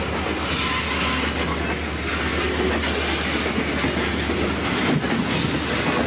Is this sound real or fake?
real